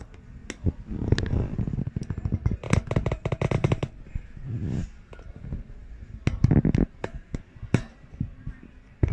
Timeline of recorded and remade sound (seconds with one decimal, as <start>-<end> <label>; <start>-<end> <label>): 0.0-9.1 recorded